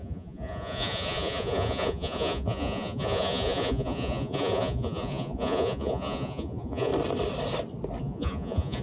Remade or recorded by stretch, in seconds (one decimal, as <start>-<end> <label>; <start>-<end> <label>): 0.0-6.9 remade; 6.9-8.0 recorded; 8.0-8.8 remade